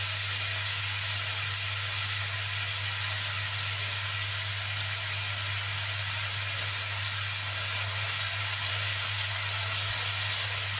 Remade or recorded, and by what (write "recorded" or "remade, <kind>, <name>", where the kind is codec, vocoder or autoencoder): recorded